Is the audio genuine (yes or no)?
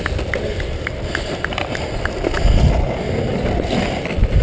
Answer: yes